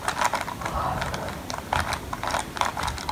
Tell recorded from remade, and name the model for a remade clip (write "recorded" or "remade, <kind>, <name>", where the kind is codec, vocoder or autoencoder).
recorded